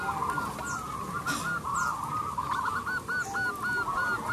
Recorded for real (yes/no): yes